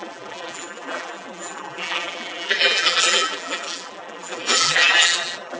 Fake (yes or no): yes